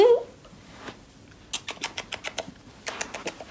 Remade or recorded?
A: recorded